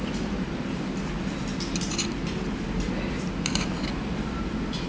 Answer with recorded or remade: recorded